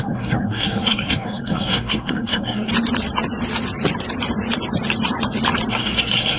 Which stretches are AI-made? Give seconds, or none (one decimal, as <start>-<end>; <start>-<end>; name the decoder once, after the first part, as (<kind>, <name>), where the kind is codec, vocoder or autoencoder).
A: 0.0-2.7 (codec, SNAC); 5.7-6.4

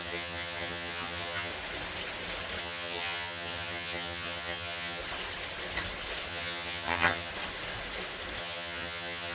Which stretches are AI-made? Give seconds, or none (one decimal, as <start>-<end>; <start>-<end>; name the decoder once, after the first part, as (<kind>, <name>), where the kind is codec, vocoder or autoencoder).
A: 0.0-1.5 (vocoder, HiFi-GAN); 2.6-5.0; 6.3-7.3; 8.4-9.3

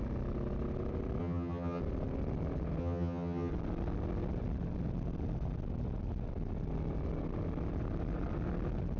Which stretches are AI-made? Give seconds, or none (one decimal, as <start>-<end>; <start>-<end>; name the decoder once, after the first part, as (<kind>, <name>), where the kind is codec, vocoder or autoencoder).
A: 1.2-1.8 (vocoder, HiFi-GAN); 2.8-3.5

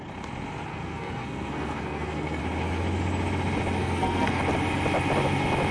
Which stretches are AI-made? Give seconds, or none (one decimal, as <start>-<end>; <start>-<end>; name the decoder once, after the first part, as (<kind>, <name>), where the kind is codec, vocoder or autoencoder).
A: 0.7-2.4 (codec, SNAC); 3.8-4.4